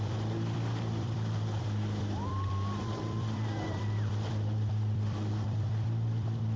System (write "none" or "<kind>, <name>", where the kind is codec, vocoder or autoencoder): vocoder, BigVGAN v2